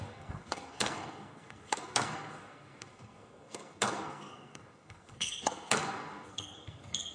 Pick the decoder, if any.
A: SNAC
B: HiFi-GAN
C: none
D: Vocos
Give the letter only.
A